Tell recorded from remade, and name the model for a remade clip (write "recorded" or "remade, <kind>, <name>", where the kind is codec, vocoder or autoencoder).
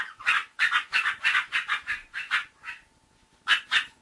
remade, vocoder, Vocos